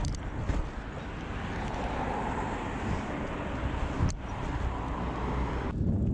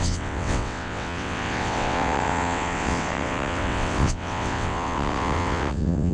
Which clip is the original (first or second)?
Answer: first